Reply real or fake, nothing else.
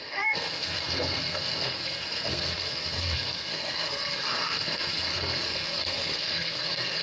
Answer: fake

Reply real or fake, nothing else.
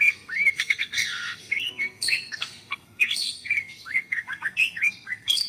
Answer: fake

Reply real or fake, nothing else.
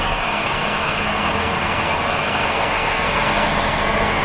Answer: fake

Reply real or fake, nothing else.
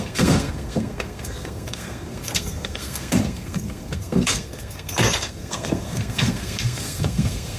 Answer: fake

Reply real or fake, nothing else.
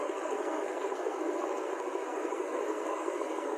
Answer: fake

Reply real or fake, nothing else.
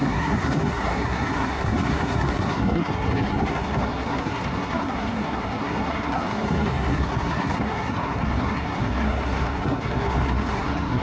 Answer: fake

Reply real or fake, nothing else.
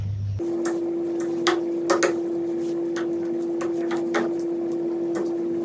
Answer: real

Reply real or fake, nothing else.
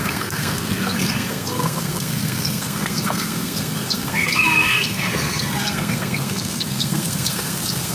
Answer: fake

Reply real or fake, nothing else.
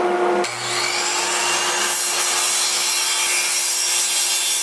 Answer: real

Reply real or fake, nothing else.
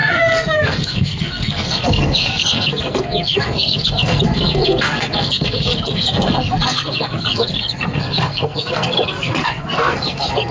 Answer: fake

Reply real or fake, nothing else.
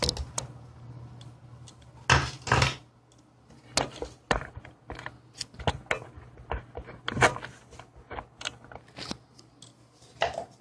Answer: real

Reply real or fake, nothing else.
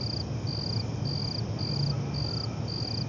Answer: real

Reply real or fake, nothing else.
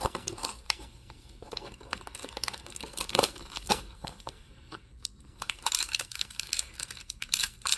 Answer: fake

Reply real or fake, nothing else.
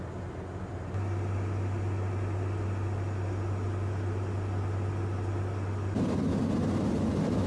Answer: real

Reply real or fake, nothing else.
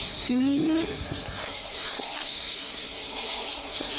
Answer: fake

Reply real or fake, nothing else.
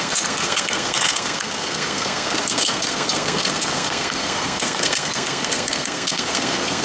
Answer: fake